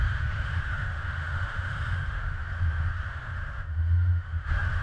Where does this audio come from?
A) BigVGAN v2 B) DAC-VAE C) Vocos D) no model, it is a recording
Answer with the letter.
B